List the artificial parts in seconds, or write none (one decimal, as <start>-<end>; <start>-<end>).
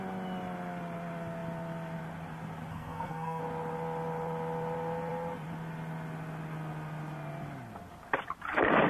2.7-3.4